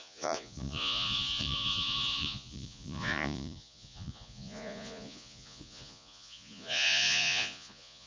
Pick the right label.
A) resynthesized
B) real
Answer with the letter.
A